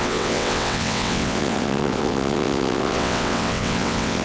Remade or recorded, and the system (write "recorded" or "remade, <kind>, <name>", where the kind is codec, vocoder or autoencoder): remade, vocoder, WaveNeXt